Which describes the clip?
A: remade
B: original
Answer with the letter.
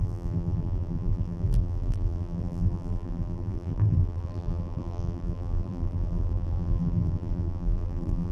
A